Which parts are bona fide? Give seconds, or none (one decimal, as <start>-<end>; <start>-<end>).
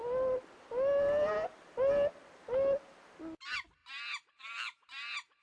0.0-5.4